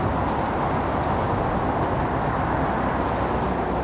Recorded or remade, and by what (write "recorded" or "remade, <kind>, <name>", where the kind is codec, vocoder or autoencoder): recorded